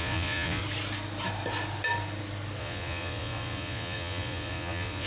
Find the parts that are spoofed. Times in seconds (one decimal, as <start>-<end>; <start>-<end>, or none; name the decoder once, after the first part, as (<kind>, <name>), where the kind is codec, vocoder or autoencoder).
0.0-0.6 (vocoder, Vocos); 2.6-5.1